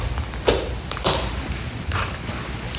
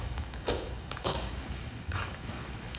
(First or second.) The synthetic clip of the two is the second